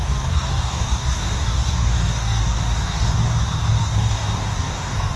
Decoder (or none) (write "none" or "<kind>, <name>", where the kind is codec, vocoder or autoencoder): codec, DAC